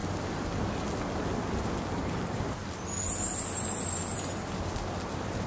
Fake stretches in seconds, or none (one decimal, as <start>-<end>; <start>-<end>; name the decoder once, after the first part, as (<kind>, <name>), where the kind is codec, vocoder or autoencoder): 1.9-2.6 (vocoder, BigVGAN v2); 5.1-5.5